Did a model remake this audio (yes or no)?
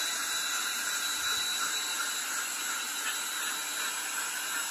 no